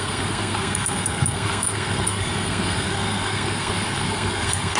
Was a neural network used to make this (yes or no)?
yes